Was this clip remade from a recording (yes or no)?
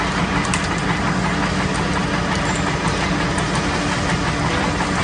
no